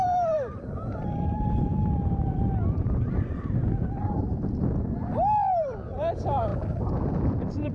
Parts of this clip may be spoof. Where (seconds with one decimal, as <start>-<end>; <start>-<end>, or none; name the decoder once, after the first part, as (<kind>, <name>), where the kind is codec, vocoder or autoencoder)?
0.0-3.6 (vocoder, BigVGAN v2); 5.5-6.5; 7.0-7.7